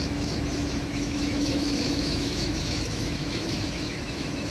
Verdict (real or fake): fake